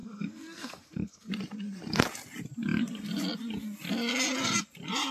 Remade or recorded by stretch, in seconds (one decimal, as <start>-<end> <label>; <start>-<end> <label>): 0.0-1.3 remade; 1.3-5.1 recorded